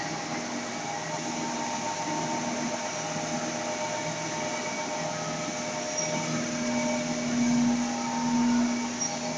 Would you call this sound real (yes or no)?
yes